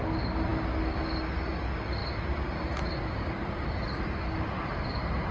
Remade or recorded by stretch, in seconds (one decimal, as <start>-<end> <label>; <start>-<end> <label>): 0.0-2.0 recorded; 2.0-4.2 remade; 4.2-5.3 recorded